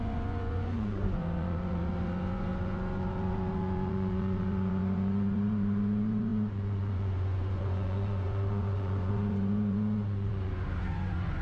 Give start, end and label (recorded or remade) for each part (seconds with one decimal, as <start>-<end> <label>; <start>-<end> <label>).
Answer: 0.0-11.4 remade